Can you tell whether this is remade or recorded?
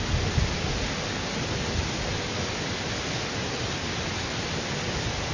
recorded